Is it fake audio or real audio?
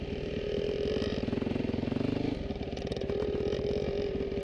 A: real